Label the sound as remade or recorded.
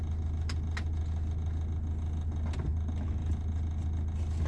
recorded